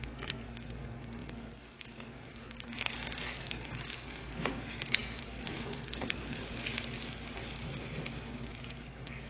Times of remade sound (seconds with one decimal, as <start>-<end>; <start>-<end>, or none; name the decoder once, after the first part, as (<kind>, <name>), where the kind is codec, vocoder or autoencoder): 0.0-6.4 (codec, SNAC); 8.3-9.3